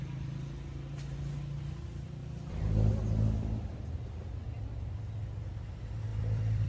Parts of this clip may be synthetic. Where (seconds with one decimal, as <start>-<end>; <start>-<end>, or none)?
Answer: 2.2-2.9; 6.1-6.7